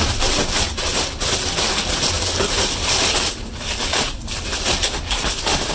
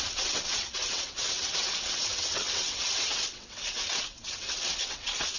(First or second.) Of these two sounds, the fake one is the second